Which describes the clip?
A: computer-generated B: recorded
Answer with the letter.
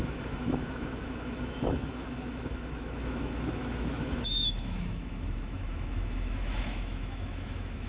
A